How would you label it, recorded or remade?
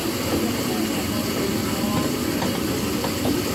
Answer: recorded